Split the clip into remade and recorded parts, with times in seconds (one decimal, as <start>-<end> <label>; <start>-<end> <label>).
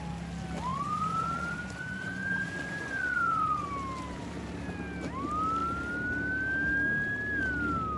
0.0-0.7 recorded; 0.7-3.7 remade; 3.7-8.0 recorded